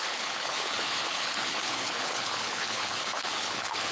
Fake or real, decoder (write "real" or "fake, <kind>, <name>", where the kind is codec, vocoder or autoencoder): fake, codec, HILCodec